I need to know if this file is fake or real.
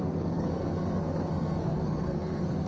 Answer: fake